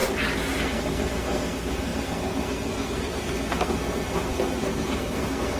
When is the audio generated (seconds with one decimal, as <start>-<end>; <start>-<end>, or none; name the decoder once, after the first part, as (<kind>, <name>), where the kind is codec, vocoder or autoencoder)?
0.6-5.6 (codec, SNAC)